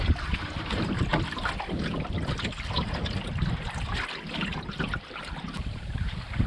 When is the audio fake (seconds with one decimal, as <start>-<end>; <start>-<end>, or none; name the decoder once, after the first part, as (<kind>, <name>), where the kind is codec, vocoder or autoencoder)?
0.0-1.1 (vocoder, BigVGAN v2); 5.0-6.5